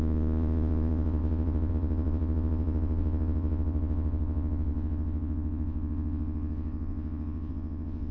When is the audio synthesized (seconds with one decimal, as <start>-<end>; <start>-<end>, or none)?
0.0-8.1